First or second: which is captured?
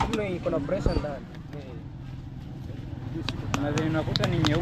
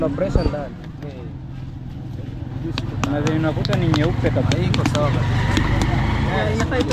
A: second